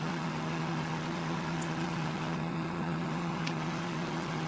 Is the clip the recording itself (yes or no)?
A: no